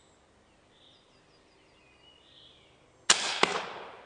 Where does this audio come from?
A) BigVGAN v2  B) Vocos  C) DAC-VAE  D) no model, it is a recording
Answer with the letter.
D